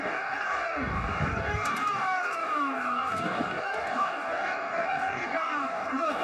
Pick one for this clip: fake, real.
fake